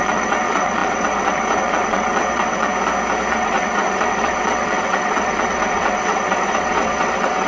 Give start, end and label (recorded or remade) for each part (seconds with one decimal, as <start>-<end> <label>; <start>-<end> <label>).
0.0-2.7 remade; 2.7-3.3 recorded; 3.3-7.5 remade